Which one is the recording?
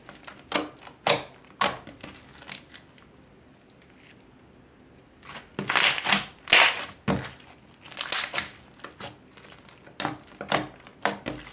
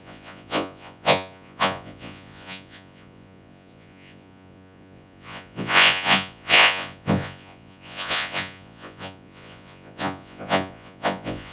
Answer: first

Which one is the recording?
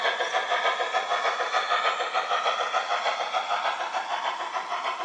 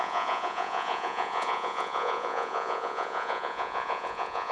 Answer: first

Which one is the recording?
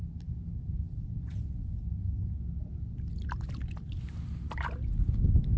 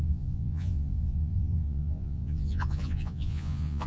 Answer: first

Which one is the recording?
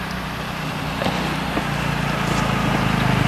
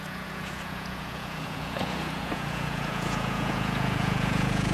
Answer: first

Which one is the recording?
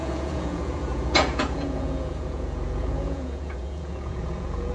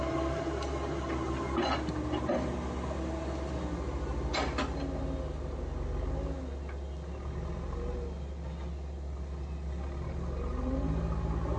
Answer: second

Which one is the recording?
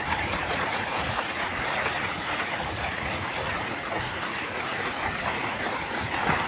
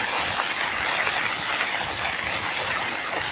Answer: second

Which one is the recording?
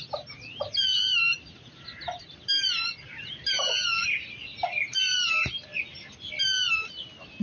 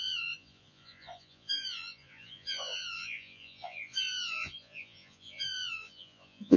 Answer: first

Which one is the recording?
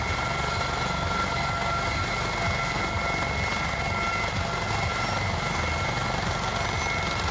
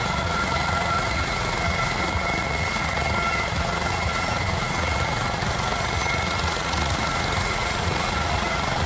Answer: first